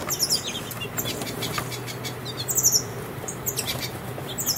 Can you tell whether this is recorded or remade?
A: recorded